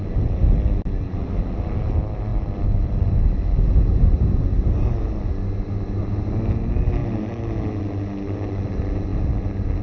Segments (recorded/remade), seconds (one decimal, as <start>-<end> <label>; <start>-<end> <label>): 0.0-9.8 recorded